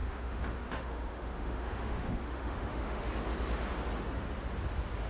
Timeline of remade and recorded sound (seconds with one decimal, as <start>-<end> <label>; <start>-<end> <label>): 0.0-3.1 remade; 3.1-5.1 recorded